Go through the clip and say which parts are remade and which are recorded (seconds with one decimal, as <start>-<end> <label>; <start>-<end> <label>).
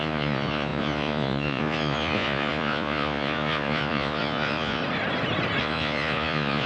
0.0-4.8 remade; 4.8-5.6 recorded; 5.6-6.7 remade